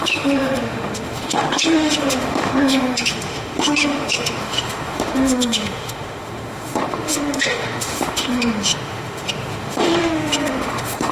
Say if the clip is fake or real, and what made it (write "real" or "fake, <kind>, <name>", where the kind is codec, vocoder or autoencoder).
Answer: fake, autoencoder, DAC-VAE